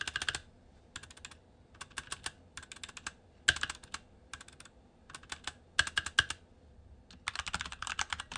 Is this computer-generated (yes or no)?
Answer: no